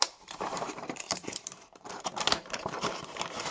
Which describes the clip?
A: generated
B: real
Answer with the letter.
A